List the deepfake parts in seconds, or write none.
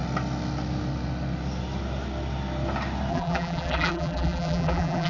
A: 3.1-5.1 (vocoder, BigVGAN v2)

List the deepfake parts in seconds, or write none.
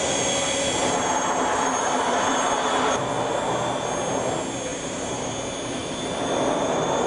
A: 0.8-3.1 (vocoder, BigVGAN v2); 4.7-5.3; 5.8-7.1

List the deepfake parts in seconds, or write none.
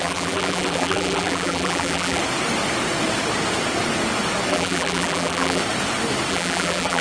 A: 0.0-2.2 (vocoder, BigVGAN v2); 4.5-5.6; 6.3-7.0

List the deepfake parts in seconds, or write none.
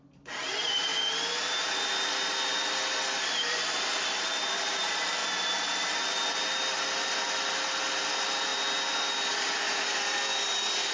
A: 0.0-0.9 (vocoder, BigVGAN v2); 3.2-5.2; 7.3-8.5; 9.3-10.3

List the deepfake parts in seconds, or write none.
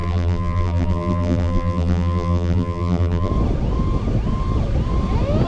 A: 0.0-3.3 (vocoder, BigVGAN v2)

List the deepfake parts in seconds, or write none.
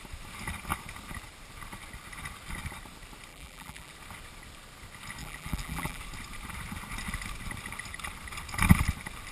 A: 3.3-3.9 (vocoder, BigVGAN v2); 5.2-6.0